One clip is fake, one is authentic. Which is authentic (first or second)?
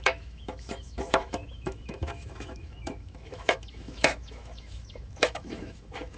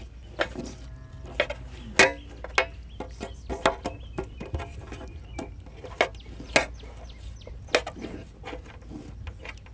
second